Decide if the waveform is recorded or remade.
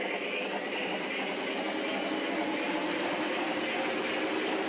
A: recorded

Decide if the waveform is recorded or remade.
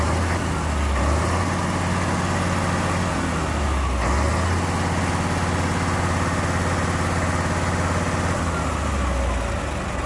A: recorded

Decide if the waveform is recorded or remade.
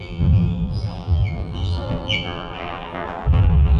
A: remade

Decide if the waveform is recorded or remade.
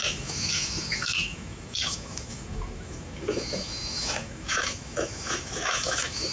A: remade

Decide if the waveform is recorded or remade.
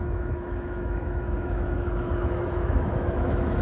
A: remade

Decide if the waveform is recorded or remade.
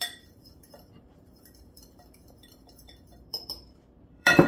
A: remade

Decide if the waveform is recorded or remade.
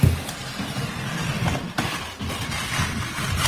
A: recorded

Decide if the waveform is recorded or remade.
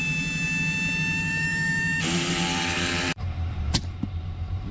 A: remade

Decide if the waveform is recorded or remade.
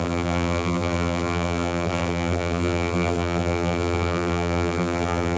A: remade